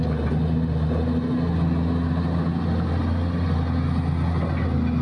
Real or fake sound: real